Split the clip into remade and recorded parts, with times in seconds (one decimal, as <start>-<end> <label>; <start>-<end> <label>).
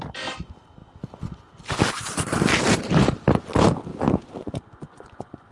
0.0-3.9 recorded; 3.9-5.5 remade